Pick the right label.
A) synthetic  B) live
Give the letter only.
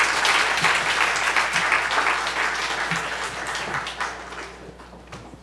B